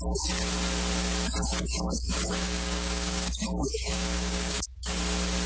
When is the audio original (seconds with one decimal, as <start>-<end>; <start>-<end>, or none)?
0.0-1.7; 5.0-5.5